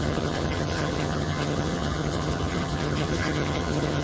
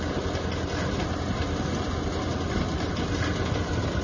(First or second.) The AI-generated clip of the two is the first